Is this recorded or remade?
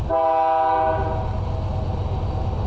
recorded